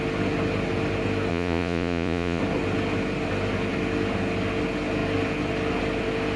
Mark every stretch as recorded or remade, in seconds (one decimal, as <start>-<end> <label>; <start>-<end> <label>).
0.0-1.3 recorded; 1.3-2.4 remade; 2.4-6.4 recorded